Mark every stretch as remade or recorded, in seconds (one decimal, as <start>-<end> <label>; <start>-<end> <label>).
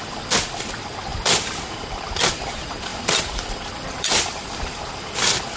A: 0.0-2.9 recorded; 2.9-4.7 remade; 4.7-5.6 recorded